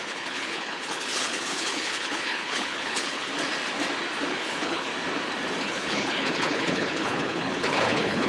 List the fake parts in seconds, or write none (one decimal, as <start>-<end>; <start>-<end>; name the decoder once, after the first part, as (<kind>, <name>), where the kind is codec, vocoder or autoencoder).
0.0-3.3 (codec, HILCodec); 4.3-4.9; 5.6-8.3